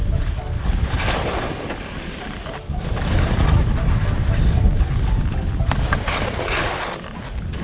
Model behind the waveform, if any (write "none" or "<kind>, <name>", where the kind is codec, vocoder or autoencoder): none